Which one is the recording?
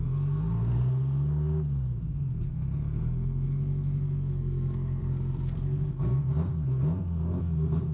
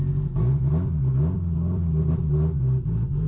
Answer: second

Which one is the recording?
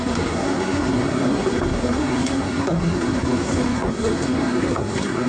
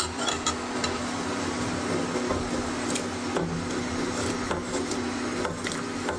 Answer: second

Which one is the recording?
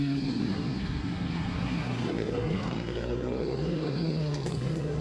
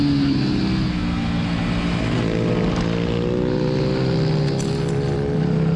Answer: second